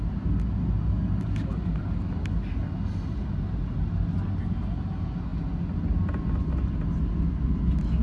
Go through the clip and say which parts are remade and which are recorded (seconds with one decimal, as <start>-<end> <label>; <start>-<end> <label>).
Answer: 0.0-8.0 recorded